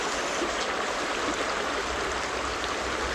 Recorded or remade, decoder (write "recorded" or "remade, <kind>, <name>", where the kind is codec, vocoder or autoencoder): recorded